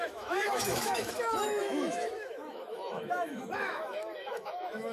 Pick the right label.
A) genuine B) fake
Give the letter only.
B